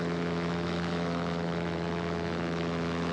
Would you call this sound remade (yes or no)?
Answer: yes